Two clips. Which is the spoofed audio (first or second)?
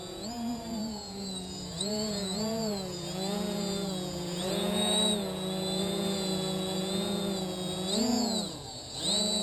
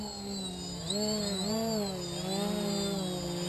first